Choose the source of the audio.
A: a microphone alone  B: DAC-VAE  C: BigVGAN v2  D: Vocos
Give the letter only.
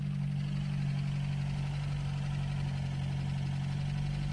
A